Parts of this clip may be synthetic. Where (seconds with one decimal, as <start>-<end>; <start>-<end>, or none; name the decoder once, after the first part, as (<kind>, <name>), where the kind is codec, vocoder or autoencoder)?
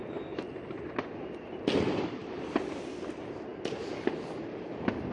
none